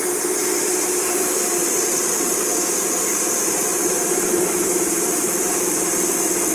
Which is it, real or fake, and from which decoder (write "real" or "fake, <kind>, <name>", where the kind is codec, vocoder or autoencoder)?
fake, vocoder, BigVGAN v2